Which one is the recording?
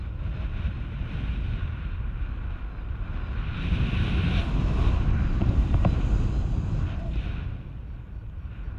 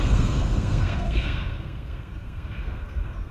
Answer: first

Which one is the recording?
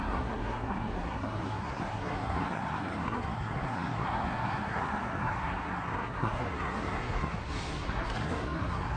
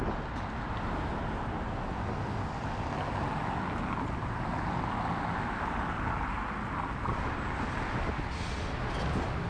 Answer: second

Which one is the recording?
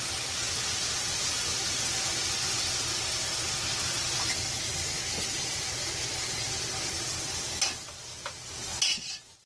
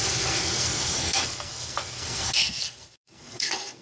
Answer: first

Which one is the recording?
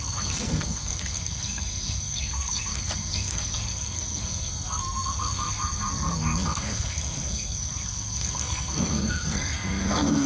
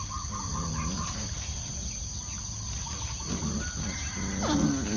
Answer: second